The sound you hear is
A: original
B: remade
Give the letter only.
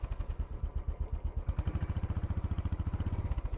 A